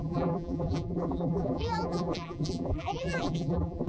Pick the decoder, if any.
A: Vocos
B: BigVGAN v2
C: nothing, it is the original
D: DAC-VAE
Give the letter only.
B